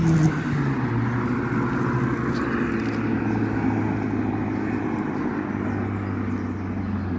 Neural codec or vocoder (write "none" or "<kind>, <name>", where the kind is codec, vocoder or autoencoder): none